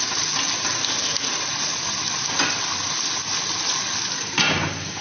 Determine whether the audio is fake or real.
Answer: real